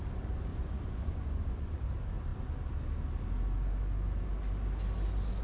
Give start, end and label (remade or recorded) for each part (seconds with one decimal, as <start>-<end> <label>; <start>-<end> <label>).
0.0-0.5 recorded; 0.5-1.8 remade; 1.8-5.4 recorded